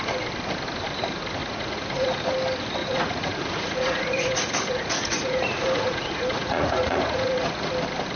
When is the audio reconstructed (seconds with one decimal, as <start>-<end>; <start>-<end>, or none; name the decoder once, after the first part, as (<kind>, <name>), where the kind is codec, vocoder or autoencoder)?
1.4-2.2 (vocoder, Vocos); 2.8-7.7

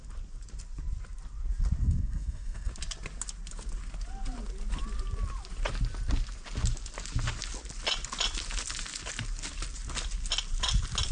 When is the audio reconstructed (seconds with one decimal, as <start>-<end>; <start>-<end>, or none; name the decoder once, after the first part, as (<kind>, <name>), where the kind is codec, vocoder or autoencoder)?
1.8-2.7 (codec, SNAC)

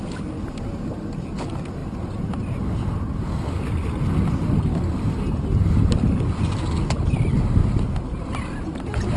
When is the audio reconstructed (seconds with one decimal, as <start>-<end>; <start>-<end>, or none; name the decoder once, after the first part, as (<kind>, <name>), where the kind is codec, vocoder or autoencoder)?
none

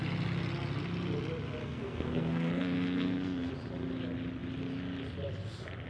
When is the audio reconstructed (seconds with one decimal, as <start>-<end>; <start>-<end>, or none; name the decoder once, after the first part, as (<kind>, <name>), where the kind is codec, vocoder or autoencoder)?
1.6-3.5 (codec, SNAC)

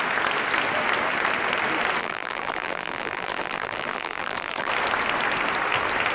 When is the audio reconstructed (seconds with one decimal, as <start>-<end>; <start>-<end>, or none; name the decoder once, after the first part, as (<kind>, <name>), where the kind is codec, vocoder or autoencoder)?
2.0-4.7 (vocoder, BigVGAN v2)